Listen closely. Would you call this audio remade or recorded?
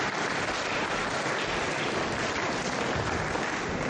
recorded